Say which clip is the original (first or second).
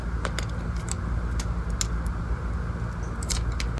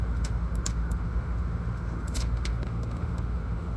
first